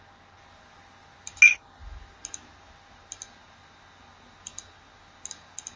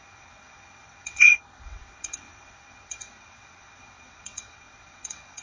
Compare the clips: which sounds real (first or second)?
first